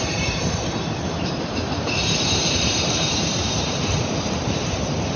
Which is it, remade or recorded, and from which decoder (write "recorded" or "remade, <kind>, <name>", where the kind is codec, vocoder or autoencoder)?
remade, vocoder, BigVGAN v2